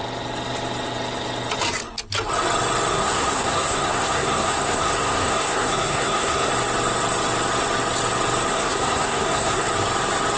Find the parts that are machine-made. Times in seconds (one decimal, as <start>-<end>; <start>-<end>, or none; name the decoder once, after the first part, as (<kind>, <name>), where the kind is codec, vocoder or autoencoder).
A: 2.9-6.5 (codec, SNAC); 8.5-9.7